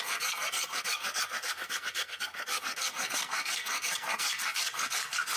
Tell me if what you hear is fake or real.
fake